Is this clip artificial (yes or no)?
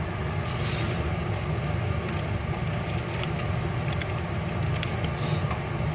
no